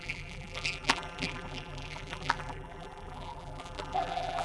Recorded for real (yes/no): no